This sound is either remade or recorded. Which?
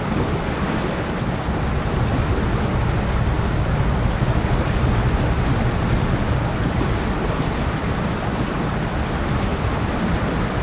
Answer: recorded